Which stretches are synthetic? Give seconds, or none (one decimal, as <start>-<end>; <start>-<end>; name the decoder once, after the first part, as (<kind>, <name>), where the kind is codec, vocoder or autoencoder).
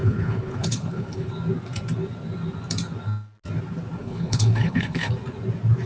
0.0-1.3 (codec, HILCodec); 4.0-5.1